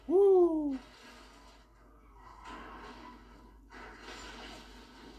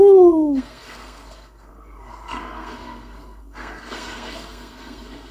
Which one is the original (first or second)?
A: first